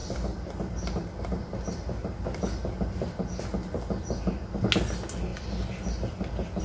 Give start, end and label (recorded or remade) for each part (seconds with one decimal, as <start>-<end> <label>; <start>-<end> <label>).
0.0-5.3 recorded; 5.3-6.6 remade